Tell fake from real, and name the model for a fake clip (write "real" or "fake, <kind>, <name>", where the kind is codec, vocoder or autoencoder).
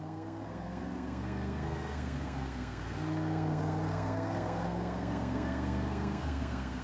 fake, codec, SNAC